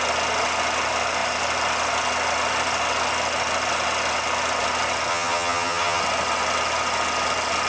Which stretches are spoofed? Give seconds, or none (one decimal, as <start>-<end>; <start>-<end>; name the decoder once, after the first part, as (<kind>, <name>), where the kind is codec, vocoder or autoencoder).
5.1-6.0 (vocoder, HiFi-GAN)